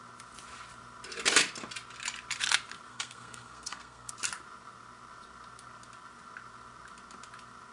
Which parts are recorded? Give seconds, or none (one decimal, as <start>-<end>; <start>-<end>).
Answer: 0.0-2.9; 4.1-7.7